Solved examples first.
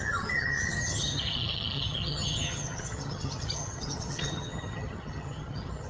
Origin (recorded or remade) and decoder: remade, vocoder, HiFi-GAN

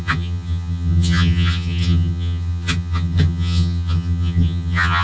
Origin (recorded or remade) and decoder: remade, vocoder, HiFi-GAN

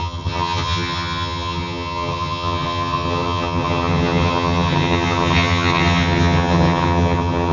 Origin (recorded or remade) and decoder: remade, vocoder, HiFi-GAN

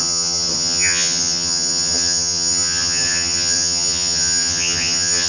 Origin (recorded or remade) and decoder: remade, vocoder, HiFi-GAN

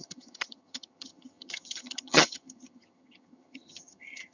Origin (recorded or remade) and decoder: remade, vocoder, HiFi-GAN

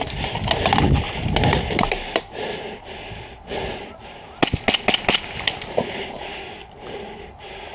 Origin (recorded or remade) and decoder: recorded